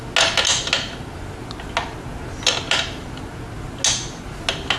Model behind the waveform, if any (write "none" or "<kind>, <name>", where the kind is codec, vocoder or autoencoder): none